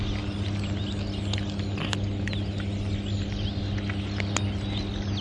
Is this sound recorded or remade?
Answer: recorded